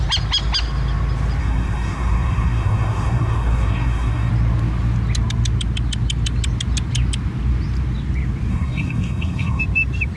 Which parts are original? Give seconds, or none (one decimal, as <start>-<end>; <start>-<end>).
0.0-1.4; 4.3-8.5; 9.6-10.2